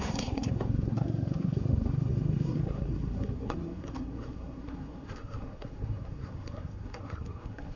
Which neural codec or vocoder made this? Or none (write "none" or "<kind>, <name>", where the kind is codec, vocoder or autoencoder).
codec, SNAC